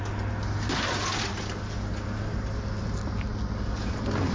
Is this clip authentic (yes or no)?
yes